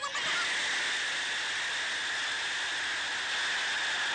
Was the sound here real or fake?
real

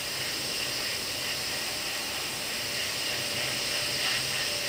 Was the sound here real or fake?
real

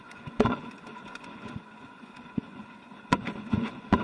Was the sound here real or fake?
fake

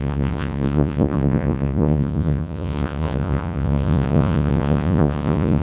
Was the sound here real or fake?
fake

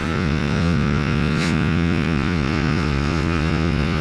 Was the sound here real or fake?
fake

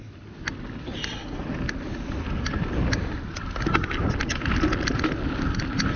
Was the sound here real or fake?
real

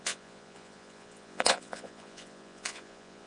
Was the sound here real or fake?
fake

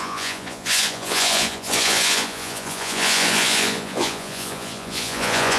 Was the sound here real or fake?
fake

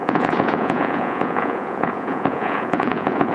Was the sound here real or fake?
fake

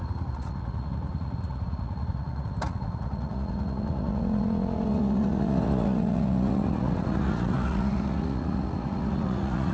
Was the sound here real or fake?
fake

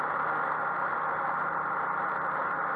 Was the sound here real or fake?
real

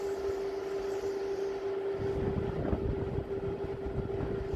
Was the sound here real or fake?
real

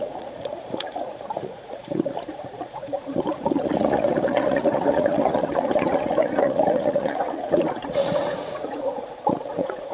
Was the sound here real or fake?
fake